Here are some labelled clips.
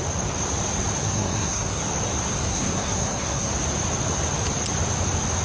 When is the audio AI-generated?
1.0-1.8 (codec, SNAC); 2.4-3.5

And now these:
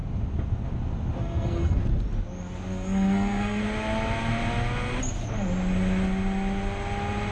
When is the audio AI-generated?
1.2-1.8 (codec, SNAC); 2.7-3.6

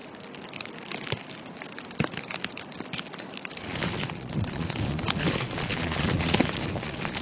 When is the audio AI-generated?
3.6-7.2 (vocoder, Vocos)